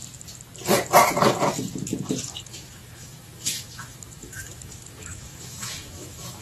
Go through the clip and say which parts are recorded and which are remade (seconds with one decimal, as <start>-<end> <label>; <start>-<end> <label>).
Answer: 0.0-2.4 recorded; 2.4-6.4 remade